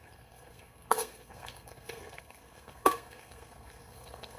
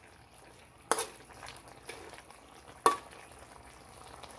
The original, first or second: second